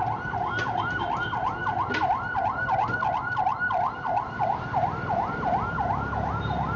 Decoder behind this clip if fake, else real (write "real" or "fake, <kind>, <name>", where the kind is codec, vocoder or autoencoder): real